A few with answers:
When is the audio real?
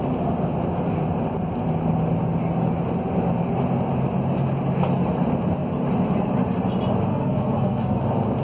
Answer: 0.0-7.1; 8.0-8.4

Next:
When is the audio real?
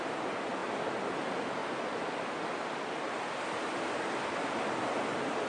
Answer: 0.0-5.5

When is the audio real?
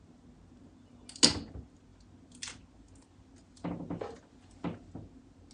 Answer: 0.0-5.5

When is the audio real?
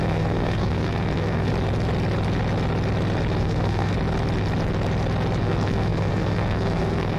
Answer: 1.5-3.4; 3.9-5.4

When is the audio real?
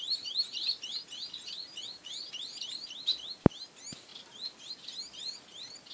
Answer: 0.0-5.9